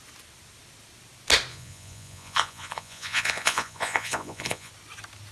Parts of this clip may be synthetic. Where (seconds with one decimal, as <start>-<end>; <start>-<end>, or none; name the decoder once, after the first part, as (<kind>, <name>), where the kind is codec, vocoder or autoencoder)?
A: 1.5-4.7 (vocoder, Vocos)